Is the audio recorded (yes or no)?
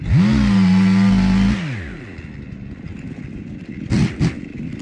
yes